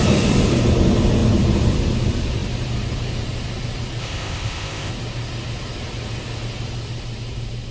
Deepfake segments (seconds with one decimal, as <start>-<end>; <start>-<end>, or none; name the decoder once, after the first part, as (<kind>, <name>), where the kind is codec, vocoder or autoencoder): 4.0-4.9 (codec, ZipCodec)

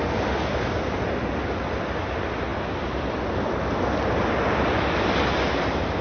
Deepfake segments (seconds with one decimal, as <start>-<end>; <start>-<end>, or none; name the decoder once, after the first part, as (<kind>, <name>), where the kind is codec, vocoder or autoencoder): none

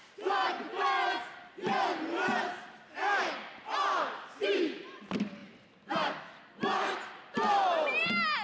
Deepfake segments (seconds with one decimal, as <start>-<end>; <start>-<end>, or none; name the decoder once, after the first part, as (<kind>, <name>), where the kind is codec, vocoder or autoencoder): none

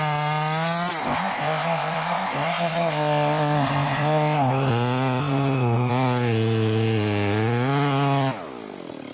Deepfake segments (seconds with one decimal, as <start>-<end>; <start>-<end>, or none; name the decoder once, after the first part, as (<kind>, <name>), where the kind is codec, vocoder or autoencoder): 1.0-4.7 (codec, ZipCodec); 5.2-5.9

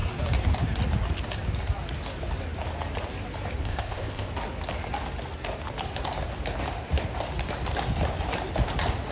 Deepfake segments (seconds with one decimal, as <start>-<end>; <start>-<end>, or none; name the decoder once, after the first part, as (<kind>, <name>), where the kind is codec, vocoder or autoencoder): 3.6-4.3 (codec, ZipCodec)

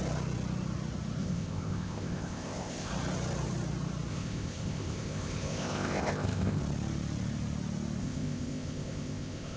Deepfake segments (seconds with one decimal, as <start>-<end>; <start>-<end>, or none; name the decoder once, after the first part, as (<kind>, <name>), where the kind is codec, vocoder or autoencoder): 1.2-2.9 (codec, ZipCodec); 4.1-6.6; 8.0-9.6

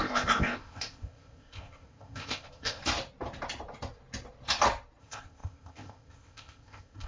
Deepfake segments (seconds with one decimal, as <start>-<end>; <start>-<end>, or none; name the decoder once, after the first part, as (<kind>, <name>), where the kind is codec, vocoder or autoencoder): 0.0-2.8 (codec, ZipCodec); 5.0-7.1

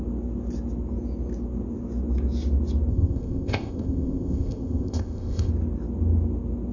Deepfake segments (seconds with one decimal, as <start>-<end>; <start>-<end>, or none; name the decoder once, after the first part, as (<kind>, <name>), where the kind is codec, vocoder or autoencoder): 2.9-5.5 (codec, ZipCodec)